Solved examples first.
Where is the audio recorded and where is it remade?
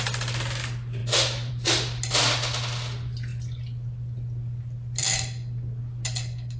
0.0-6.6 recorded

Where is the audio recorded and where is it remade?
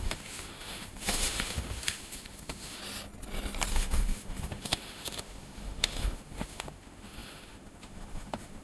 0.0-2.8 remade; 2.8-3.7 recorded; 3.7-8.6 remade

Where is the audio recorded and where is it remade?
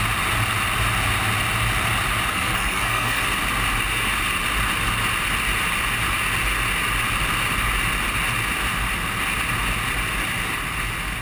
0.0-2.3 recorded; 2.3-3.2 remade; 3.2-11.2 recorded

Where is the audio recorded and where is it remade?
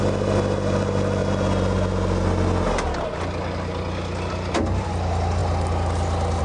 0.0-6.4 recorded